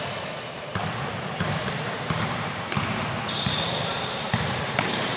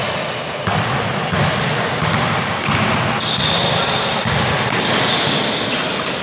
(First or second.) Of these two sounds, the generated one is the first